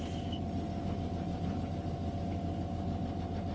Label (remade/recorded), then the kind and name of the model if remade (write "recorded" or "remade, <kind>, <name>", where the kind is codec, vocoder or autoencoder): recorded